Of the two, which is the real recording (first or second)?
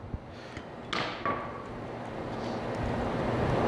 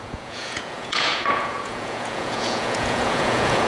first